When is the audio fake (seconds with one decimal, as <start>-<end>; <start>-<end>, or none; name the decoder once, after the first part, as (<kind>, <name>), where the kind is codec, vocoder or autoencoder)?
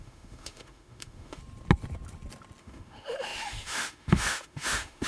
0.0-1.4 (autoencoder, DAC-VAE); 2.6-5.1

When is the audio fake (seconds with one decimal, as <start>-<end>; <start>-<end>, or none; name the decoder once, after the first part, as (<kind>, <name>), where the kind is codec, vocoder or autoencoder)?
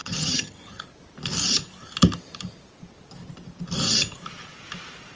0.0-0.8 (vocoder, HiFi-GAN)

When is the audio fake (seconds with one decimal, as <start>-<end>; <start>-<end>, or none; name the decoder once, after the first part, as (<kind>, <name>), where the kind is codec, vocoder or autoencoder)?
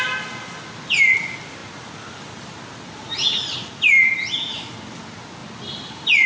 none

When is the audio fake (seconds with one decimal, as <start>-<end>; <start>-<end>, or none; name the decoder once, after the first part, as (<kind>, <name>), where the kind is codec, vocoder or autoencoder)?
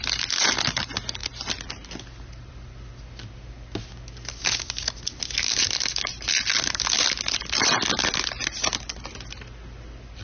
none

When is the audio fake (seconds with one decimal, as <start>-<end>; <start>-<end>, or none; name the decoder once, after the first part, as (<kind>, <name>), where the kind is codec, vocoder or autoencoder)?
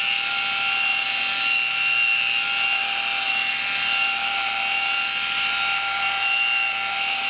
none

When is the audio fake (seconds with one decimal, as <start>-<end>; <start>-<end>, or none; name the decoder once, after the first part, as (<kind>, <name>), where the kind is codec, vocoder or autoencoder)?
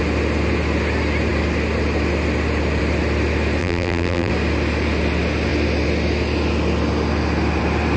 3.6-4.3 (vocoder, BigVGAN v2)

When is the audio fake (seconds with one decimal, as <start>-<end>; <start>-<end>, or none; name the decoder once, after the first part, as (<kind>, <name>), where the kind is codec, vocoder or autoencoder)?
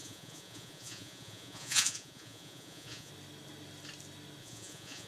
0.0-3.1 (vocoder, Vocos); 4.4-5.1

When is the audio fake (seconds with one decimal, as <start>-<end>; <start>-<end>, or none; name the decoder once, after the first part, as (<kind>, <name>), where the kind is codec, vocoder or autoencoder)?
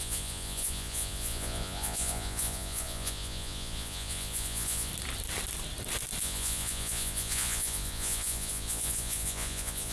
0.0-4.9 (vocoder, Vocos); 6.2-9.9